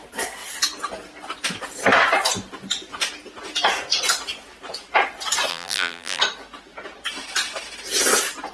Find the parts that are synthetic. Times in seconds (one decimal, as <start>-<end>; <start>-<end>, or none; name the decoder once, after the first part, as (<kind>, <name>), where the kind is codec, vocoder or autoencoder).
5.5-6.2 (vocoder, BigVGAN v2)